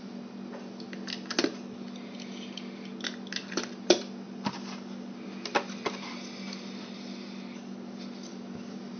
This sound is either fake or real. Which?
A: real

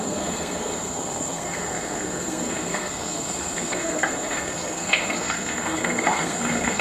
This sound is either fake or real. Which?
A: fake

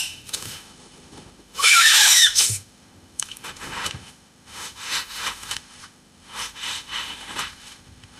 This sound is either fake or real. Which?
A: fake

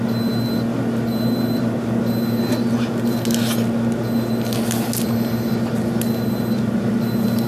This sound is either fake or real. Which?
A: real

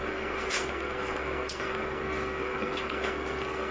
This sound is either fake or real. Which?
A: fake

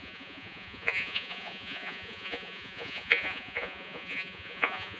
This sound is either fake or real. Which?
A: fake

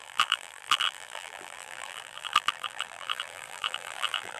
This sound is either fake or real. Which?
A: fake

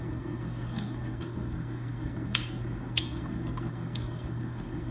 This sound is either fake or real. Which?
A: fake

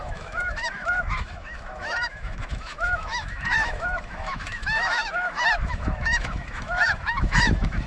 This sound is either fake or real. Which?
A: fake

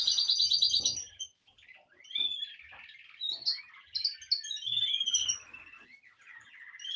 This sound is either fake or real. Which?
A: real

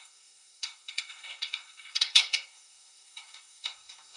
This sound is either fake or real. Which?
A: fake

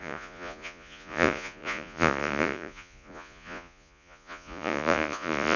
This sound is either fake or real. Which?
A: fake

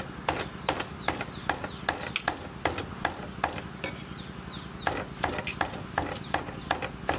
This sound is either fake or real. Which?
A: real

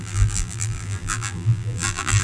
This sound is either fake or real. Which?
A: fake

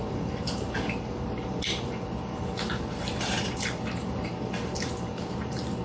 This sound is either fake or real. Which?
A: fake